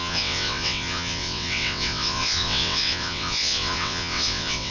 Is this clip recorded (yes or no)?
no